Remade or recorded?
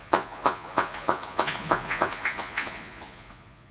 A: remade